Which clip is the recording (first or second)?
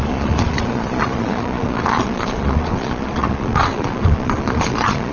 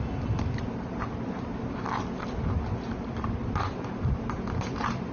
second